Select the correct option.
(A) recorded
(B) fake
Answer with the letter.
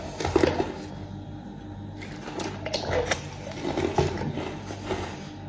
A